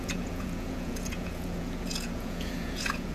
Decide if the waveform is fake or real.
fake